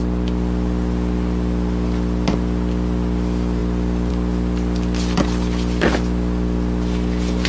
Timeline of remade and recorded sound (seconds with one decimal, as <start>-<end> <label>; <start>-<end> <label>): 0.0-7.5 recorded